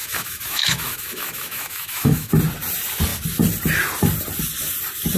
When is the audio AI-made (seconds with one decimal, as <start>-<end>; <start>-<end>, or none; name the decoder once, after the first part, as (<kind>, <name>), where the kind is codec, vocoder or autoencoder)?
0.0-2.3 (autoencoder, DAC-VAE)